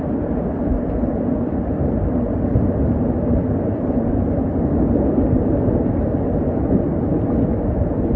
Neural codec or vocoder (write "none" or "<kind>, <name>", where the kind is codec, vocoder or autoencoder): none